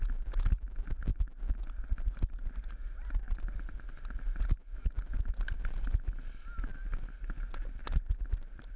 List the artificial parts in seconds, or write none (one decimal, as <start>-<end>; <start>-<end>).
1.1-4.2